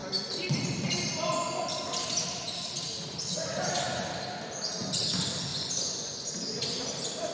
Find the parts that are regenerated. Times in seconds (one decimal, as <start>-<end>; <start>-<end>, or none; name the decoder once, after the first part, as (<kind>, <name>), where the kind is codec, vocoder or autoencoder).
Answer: 5.5-6.3 (vocoder, Vocos)

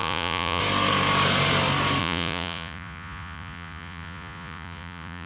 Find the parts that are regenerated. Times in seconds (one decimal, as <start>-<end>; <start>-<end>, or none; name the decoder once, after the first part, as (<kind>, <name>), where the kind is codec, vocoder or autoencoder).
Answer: 0.0-0.6 (vocoder, Vocos); 2.0-5.3